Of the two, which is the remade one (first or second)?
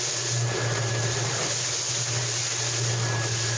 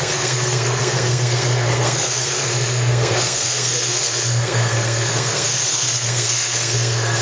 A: second